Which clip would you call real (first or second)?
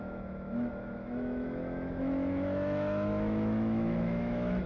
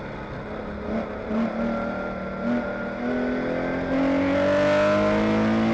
second